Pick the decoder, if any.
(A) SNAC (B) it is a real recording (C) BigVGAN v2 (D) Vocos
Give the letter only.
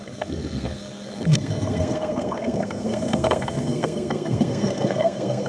A